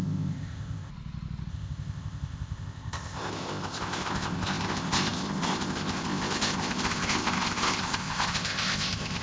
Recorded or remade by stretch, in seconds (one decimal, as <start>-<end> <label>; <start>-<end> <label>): 0.0-0.9 remade; 0.9-1.5 recorded; 1.5-9.2 remade